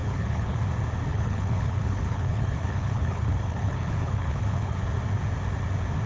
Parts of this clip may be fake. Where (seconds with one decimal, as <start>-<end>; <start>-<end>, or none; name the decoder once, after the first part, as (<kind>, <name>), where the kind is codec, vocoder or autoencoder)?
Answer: 0.0-0.6 (codec, HILCodec); 1.1-4.8